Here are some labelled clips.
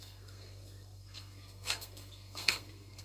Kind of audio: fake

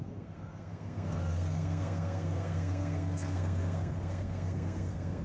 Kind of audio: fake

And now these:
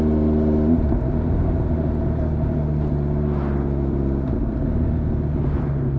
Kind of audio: real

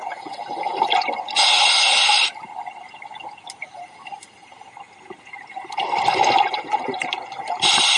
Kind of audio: real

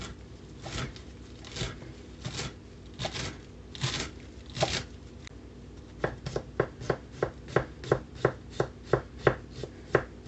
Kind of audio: real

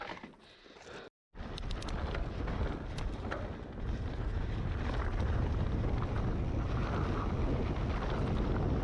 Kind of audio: real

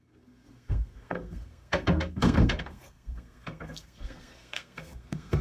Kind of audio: fake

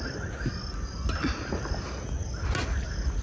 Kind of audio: real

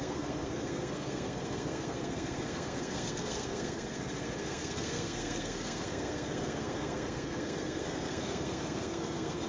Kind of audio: fake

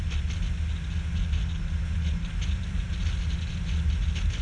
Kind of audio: real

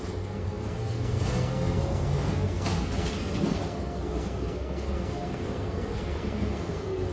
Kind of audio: fake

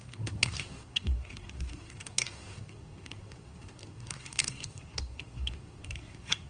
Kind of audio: fake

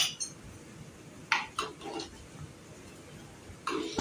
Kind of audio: real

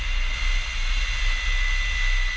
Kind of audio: real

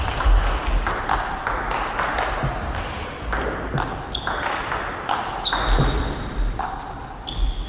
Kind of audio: real